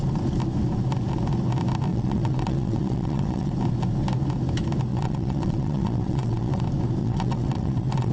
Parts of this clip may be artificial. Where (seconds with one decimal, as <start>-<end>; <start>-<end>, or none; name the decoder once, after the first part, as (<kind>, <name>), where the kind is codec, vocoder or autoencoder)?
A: 1.9-3.5 (vocoder, WaveNeXt); 4.9-6.6; 7.0-8.1